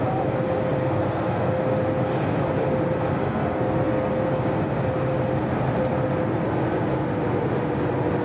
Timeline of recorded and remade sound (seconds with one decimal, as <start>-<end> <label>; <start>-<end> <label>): 0.0-0.8 recorded; 0.8-1.6 remade; 1.6-3.1 recorded; 3.1-4.1 remade; 4.1-8.2 recorded

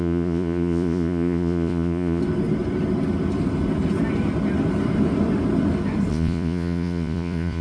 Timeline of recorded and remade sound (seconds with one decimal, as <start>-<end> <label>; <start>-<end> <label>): 0.0-2.2 remade; 2.2-6.1 recorded; 6.1-7.6 remade

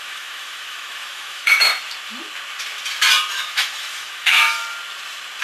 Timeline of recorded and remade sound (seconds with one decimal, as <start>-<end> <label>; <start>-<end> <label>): 0.0-1.7 remade; 1.7-3.3 recorded; 3.3-4.6 remade; 4.6-5.4 recorded

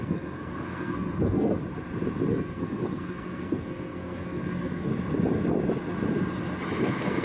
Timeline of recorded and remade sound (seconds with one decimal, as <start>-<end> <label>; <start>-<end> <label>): 0.0-1.6 remade; 1.6-2.3 recorded; 2.3-4.9 remade; 4.9-6.8 recorded; 6.8-7.2 remade